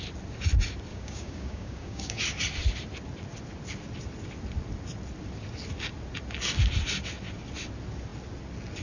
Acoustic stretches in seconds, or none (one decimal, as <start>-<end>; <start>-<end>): 0.0-0.9; 2.2-8.8